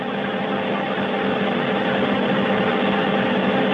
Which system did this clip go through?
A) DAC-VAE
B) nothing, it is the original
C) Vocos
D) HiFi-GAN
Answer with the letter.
B